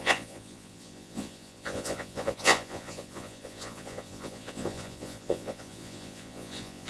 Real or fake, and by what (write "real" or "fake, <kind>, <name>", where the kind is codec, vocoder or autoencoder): fake, vocoder, Vocos